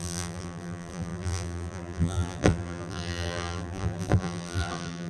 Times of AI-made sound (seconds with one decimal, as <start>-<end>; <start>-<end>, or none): 0.0-5.1